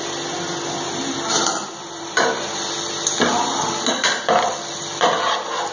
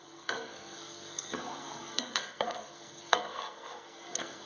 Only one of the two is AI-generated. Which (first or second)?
second